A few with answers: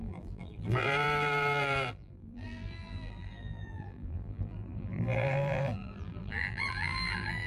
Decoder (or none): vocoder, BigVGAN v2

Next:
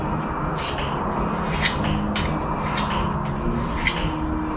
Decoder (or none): none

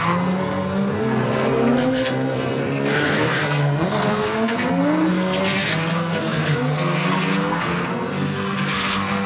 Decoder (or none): codec, SNAC